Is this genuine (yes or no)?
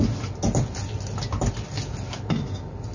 yes